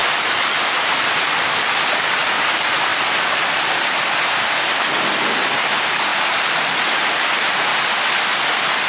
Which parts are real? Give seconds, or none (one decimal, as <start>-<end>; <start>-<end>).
0.0-6.1; 7.8-8.9